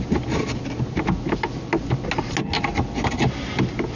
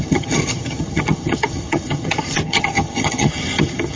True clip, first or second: first